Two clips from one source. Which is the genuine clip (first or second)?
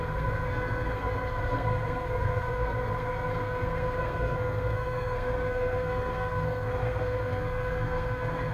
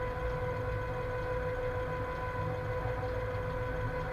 second